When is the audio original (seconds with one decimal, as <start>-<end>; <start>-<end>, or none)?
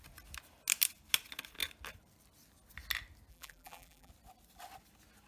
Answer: 0.0-3.3; 4.1-5.3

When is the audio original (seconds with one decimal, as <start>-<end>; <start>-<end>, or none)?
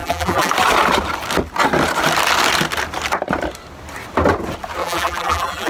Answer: 0.5-4.8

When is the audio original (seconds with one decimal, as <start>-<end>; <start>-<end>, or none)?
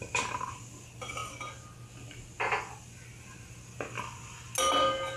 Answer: 1.2-2.6; 4.5-5.2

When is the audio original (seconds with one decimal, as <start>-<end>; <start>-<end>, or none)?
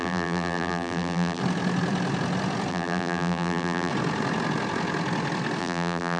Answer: 1.4-2.7; 3.9-5.6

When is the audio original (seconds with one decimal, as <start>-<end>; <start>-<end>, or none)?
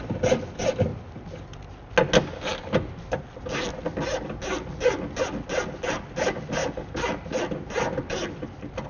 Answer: 0.0-6.6; 7.4-8.9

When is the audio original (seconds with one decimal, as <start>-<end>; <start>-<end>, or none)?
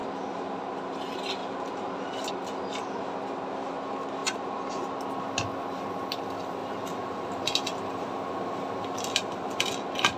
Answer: 0.0-1.4; 2.3-6.6; 7.4-10.2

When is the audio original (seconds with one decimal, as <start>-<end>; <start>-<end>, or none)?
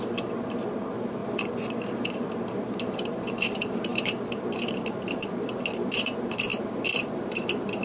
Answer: 1.2-2.0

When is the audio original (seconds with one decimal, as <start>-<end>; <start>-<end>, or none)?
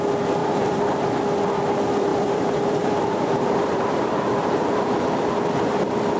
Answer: 0.0-0.4; 1.2-2.1; 4.9-6.2